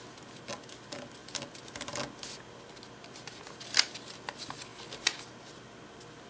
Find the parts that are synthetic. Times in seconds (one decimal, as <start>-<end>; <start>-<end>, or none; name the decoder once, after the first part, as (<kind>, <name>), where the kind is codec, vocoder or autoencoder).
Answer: none